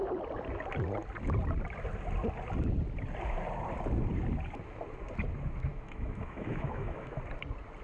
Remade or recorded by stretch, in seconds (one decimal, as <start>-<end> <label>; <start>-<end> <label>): 0.0-5.7 recorded; 5.7-7.2 remade; 7.2-7.8 recorded